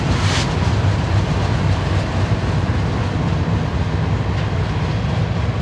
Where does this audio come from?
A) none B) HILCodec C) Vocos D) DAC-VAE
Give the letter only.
A